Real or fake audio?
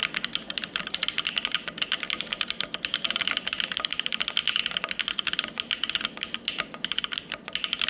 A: real